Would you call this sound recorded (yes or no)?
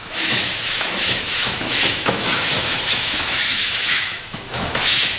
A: no